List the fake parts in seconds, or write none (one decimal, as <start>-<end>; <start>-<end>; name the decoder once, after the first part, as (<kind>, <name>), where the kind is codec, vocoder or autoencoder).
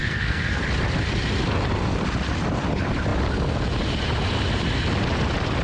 0.0-0.6 (codec, SNAC)